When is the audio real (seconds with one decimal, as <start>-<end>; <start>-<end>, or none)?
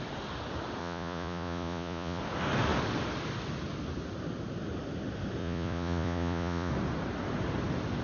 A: 0.0-0.8; 2.2-5.4; 6.7-8.0